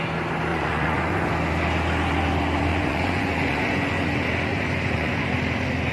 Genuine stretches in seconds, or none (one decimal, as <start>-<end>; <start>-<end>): 0.0-0.5; 1.3-2.7; 4.1-4.5; 5.2-5.9